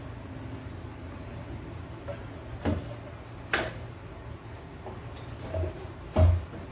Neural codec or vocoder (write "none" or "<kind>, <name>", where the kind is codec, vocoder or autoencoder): none